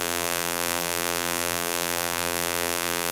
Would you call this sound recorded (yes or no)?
no